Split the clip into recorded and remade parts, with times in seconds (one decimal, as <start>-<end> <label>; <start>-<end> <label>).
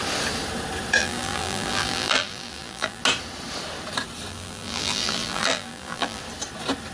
0.0-1.0 recorded; 1.0-3.0 remade; 3.0-4.3 recorded; 4.3-6.2 remade; 6.2-6.9 recorded